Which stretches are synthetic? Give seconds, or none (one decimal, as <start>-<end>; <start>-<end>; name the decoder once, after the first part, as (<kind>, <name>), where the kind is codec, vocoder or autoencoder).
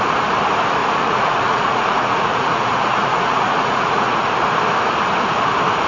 0.8-4.3 (vocoder, Vocos)